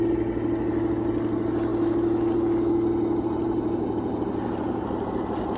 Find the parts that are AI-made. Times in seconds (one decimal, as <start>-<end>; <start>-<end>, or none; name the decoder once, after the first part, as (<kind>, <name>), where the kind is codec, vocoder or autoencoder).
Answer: none